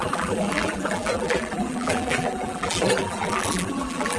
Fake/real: fake